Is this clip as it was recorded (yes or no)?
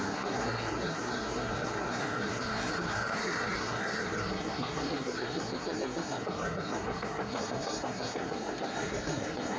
no